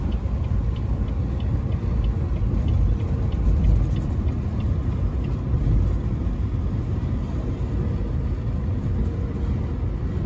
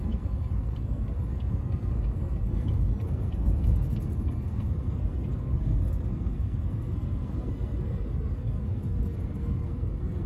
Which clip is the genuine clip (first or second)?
first